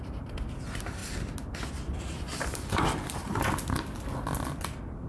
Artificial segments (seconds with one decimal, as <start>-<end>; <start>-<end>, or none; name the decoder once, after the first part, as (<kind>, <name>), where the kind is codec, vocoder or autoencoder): none